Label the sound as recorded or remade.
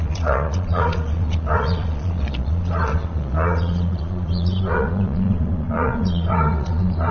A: remade